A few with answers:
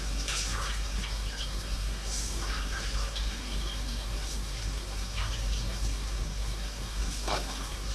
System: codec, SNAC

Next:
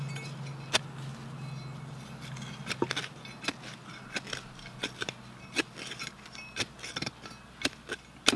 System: none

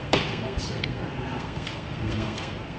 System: codec, SNAC